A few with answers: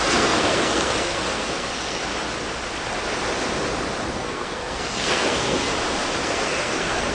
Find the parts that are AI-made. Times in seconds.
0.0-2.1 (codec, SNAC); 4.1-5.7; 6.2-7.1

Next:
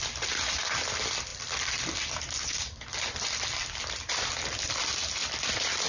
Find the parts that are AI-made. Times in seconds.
1.3-4.8 (vocoder, BigVGAN v2); 5.2-5.9

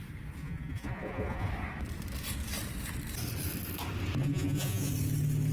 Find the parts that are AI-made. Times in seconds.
0.4-1.5 (vocoder, Vocos); 4.2-4.9

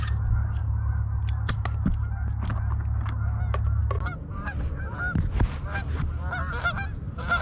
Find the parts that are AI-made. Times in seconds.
none

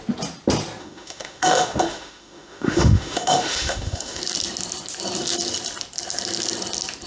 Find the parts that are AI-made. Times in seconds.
0.8-4.2 (autoencoder, DAC-VAE)

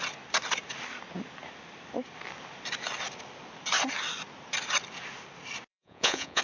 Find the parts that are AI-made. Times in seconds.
5.7-6.4 (vocoder, Vocos)

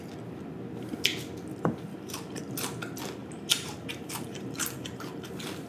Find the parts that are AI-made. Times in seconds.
1.9-2.4 (vocoder, BigVGAN v2); 3.2-5.3

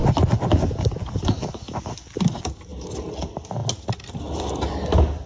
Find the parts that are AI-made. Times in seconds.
none